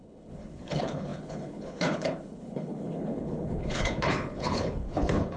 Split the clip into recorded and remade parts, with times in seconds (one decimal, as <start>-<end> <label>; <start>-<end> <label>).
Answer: 0.0-5.4 remade